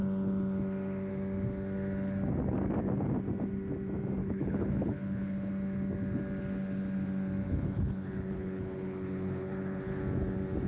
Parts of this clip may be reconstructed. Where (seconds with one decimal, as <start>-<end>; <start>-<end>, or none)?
4.2-5.5; 7.4-10.0